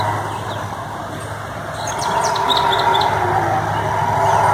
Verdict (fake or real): real